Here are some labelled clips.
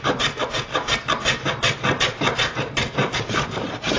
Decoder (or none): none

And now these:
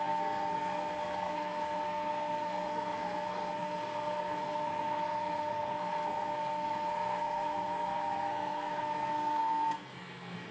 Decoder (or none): codec, SNAC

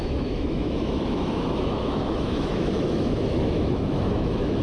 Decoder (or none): autoencoder, DAC-VAE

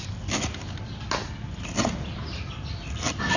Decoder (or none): none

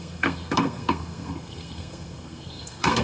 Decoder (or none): codec, SNAC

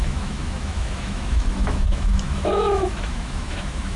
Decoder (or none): autoencoder, DAC-VAE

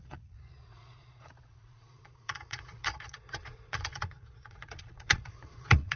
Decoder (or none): vocoder, Vocos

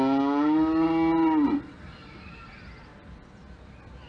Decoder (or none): none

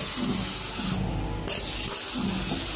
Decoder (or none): none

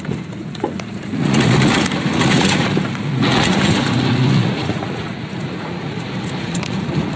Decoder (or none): vocoder, Vocos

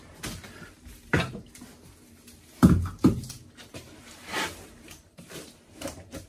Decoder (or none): vocoder, BigVGAN v2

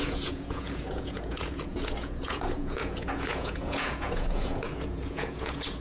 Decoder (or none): vocoder, Vocos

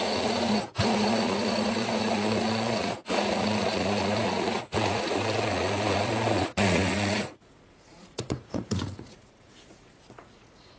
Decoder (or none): vocoder, Vocos